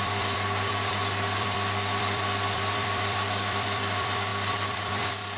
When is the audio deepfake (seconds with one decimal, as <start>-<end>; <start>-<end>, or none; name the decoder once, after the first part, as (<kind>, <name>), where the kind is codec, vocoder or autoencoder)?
0.0-5.4 (vocoder, BigVGAN v2)